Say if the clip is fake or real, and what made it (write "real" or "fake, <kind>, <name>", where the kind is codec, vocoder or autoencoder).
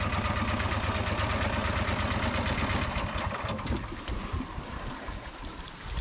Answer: real